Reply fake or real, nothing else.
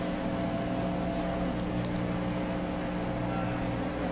real